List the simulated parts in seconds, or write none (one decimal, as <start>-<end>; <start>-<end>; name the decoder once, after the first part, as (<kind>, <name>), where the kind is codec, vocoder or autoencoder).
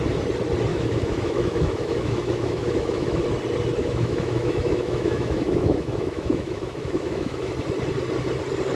0.7-3.2 (autoencoder, DAC-VAE); 3.8-7.5